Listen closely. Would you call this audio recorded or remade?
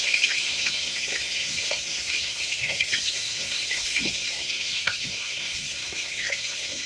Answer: remade